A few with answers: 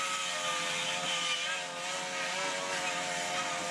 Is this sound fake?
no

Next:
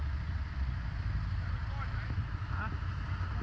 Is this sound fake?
no